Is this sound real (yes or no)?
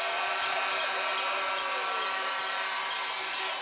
yes